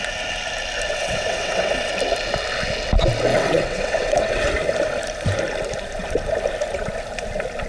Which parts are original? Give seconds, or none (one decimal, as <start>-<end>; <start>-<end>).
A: 0.0-0.9; 1.9-3.3; 4.5-7.7